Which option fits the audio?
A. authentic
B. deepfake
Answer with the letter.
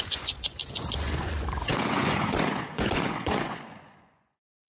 B